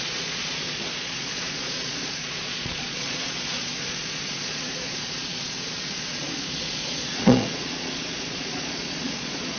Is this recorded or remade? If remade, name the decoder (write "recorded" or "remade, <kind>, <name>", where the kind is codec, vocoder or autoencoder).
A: remade, vocoder, Vocos